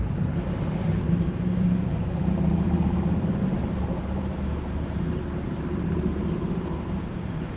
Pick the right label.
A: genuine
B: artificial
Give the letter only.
B